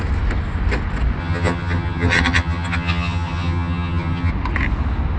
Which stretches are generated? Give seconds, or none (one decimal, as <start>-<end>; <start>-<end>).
1.2-4.3